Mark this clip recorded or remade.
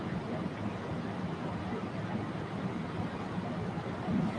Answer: recorded